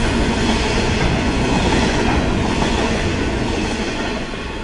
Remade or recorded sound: remade